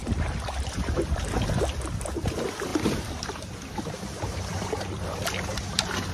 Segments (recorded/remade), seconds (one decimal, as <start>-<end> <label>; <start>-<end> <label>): 0.0-2.7 recorded; 2.7-6.1 remade